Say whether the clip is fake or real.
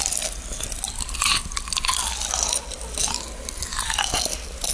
real